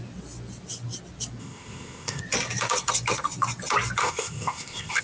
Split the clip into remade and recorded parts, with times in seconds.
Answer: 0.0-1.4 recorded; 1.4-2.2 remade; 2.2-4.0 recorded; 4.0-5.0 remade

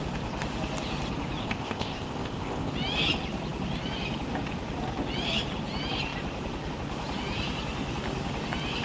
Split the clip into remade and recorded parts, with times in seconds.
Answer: 0.0-1.4 recorded; 1.4-2.7 remade; 2.7-8.8 recorded